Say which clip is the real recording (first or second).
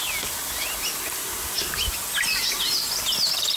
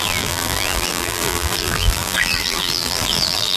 first